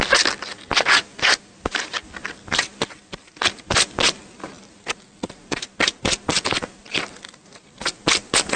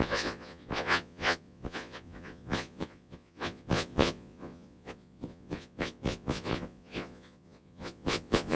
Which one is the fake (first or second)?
second